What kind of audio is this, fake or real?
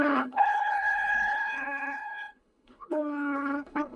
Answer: fake